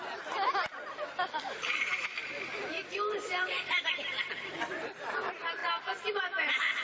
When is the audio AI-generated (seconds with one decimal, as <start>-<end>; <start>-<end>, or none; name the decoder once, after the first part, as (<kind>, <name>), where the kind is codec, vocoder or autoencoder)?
none